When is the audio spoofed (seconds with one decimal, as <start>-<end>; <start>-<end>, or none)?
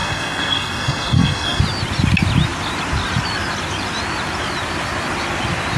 0.0-1.6